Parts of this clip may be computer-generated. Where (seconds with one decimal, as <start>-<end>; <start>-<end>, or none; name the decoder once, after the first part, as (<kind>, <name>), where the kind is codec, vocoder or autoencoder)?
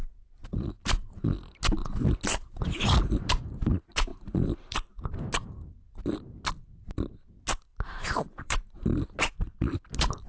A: 4.1-4.9 (vocoder, BigVGAN v2); 7.7-8.6